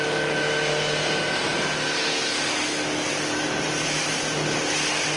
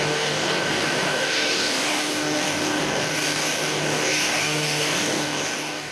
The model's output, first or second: second